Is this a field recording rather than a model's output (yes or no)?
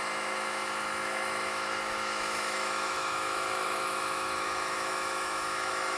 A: no